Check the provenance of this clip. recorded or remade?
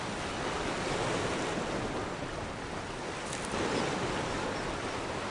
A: recorded